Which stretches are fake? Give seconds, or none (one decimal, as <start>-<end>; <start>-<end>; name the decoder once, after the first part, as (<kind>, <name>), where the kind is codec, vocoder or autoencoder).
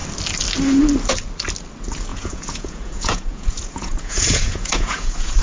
2.1-5.4 (vocoder, Vocos)